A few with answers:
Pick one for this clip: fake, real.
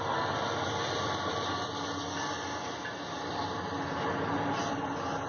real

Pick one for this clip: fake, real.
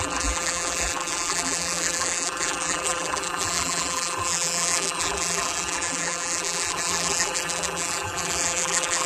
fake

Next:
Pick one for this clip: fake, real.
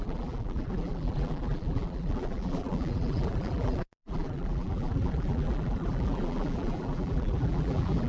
fake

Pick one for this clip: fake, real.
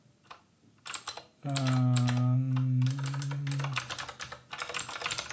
real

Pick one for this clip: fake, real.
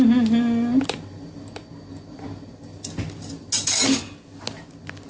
real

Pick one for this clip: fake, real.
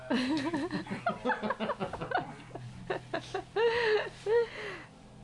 real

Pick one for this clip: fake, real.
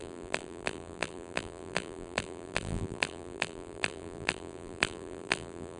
fake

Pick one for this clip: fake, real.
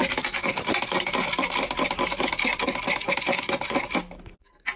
real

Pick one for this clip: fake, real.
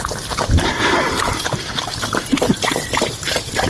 fake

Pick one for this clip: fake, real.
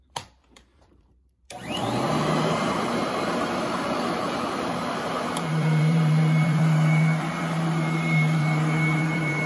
fake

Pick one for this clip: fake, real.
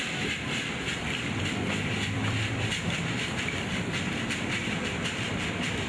fake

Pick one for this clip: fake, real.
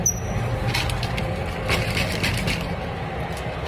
real